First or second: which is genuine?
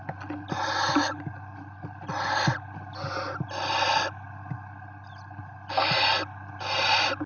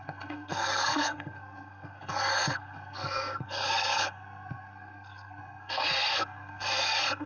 first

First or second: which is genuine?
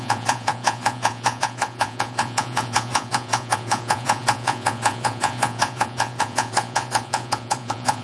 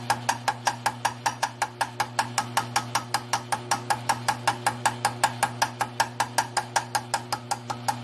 second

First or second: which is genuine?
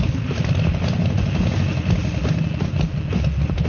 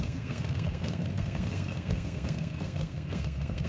first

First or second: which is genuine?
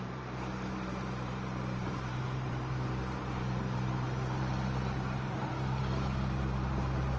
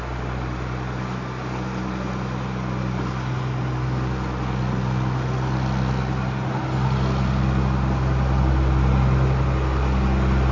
second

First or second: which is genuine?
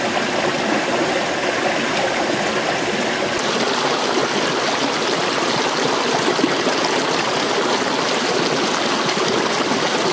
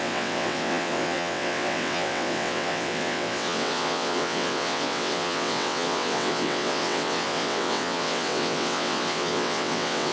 first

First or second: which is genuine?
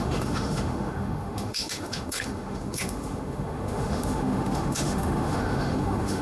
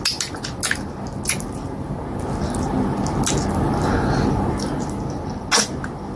second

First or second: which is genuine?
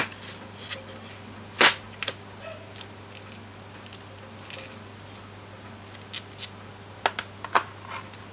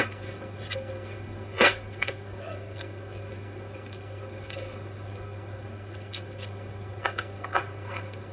first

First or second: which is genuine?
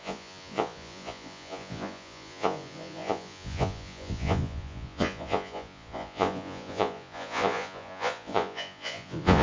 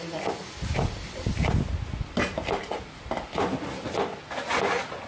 second